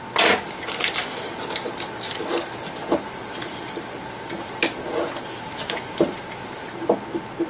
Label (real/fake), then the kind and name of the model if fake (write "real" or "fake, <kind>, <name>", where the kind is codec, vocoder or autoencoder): real